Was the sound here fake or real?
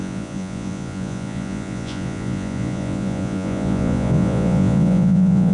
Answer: fake